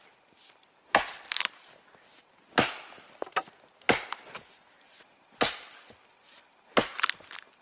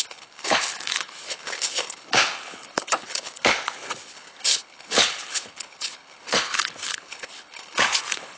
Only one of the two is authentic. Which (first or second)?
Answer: first